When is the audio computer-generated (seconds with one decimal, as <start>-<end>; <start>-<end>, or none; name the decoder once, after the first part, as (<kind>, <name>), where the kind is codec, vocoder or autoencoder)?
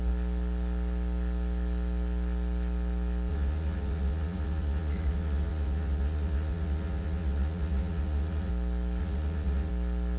3.3-8.5 (vocoder, Vocos); 9.0-9.7